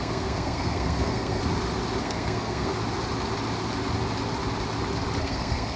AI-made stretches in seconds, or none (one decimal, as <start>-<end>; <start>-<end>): 0.0-1.4; 2.0-2.7; 5.2-5.8